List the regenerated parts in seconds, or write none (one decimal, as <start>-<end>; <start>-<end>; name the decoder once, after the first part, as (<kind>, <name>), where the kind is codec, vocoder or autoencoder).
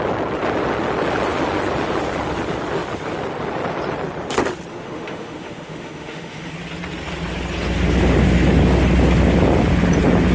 4.7-6.5 (autoencoder, DAC-VAE)